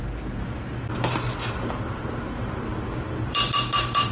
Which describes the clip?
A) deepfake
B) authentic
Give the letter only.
A